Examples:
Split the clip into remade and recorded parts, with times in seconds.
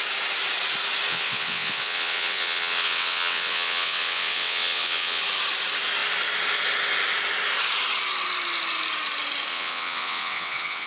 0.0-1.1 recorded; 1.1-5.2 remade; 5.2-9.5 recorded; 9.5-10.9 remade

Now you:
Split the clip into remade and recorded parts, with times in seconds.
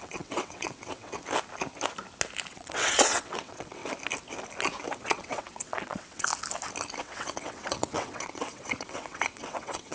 0.0-1.2 remade; 1.2-2.5 recorded; 2.5-3.8 remade; 3.8-4.9 recorded; 4.9-6.3 remade; 6.3-7.0 recorded; 7.0-9.9 remade